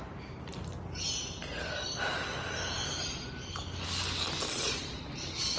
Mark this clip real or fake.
real